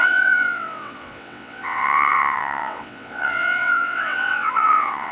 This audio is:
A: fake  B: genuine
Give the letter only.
A